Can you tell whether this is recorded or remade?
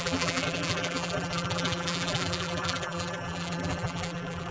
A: remade